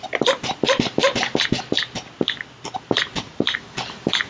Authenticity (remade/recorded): recorded